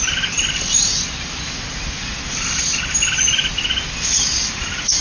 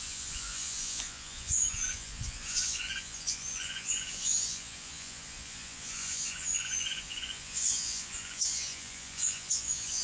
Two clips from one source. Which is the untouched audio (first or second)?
first